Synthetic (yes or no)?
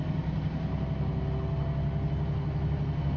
no